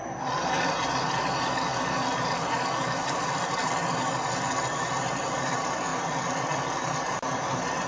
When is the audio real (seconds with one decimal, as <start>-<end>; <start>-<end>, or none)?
0.0-7.9

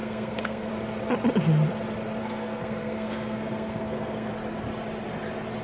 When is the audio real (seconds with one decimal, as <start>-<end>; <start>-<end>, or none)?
0.7-2.2; 4.3-5.6

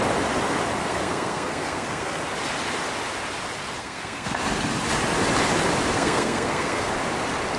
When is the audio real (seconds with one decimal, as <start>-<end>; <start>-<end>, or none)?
0.0-0.8; 2.2-3.8; 4.4-5.9; 6.9-7.6

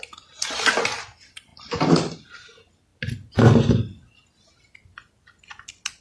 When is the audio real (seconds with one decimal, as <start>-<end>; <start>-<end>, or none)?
0.0-6.0

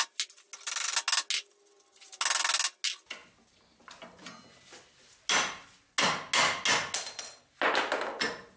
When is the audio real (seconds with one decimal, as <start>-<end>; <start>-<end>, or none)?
0.0-8.6

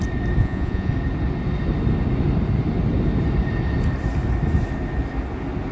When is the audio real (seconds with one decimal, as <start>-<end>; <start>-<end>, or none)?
0.0-0.4; 0.9-5.7